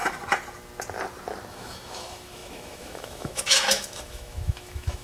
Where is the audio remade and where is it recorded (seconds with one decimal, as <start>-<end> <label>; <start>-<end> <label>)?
0.0-1.5 recorded; 1.5-5.0 remade